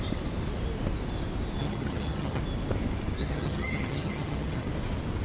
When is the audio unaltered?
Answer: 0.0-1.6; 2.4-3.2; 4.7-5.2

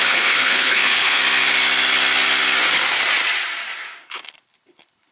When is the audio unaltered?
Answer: 1.2-4.0

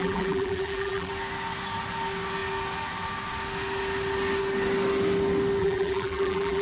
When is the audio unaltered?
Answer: 1.1-5.6

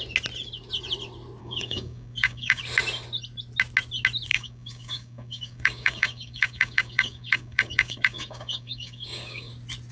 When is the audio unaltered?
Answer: 0.0-1.4; 2.6-4.3; 9.5-9.9

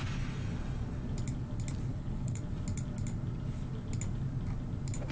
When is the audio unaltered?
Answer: 0.0-1.9; 2.4-5.1

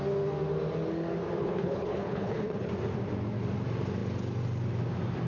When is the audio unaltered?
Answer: 0.0-1.4; 2.7-5.3

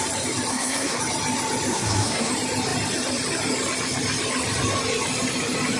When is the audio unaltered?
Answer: 0.0-0.5; 1.0-1.7; 2.3-5.8

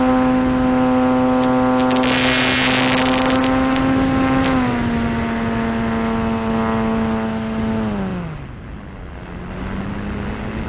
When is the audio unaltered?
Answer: 0.0-10.7